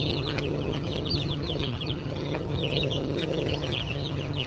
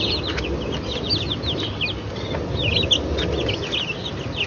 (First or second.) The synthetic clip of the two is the first